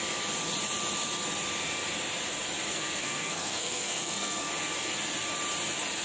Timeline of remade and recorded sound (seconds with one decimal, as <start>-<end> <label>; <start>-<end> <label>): 0.0-2.7 recorded; 2.7-4.5 remade; 4.5-6.0 recorded